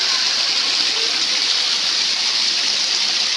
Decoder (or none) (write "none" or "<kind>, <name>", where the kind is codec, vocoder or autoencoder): vocoder, BigVGAN v2